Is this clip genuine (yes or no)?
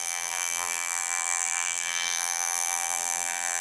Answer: no